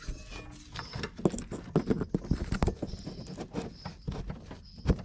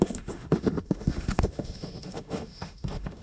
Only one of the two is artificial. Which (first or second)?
second